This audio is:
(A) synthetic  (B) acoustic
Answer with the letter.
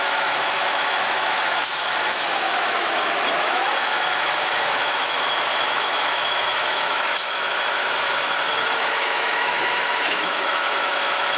A